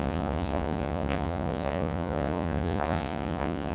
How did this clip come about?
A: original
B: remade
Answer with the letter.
B